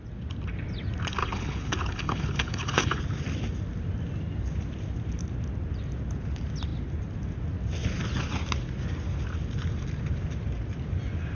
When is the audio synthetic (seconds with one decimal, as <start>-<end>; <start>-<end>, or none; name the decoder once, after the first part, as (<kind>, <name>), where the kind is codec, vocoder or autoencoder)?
1.2-3.0 (codec, HILCodec)